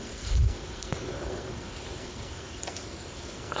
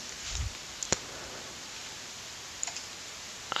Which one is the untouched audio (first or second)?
second